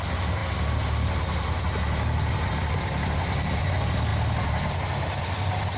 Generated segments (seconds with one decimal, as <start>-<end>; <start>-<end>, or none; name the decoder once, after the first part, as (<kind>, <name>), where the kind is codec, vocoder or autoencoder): none